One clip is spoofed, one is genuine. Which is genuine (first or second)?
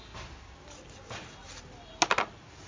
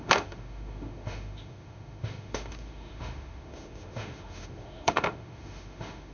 first